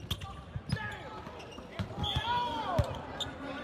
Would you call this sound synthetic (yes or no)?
no